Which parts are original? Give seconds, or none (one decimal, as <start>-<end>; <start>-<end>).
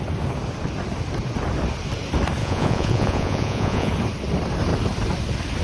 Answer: 0.0-2.4; 3.9-5.6